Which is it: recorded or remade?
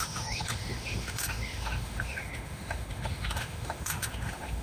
remade